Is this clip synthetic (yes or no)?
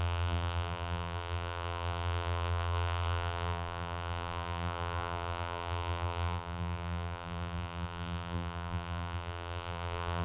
yes